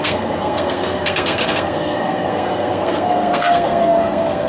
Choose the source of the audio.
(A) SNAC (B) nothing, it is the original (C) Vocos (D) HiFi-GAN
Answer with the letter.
A